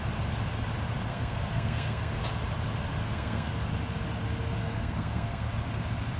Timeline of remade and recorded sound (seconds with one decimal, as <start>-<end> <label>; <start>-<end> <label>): 0.0-1.1 recorded; 1.1-2.2 remade; 2.2-3.0 recorded; 3.0-3.5 remade; 3.5-4.6 recorded; 4.6-5.5 remade; 5.5-6.2 recorded